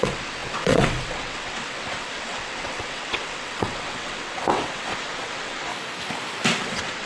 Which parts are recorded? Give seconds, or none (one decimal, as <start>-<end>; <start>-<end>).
5.7-6.6